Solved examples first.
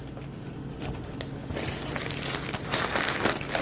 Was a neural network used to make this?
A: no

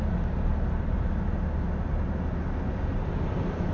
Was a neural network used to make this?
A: no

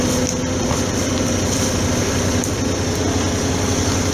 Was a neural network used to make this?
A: no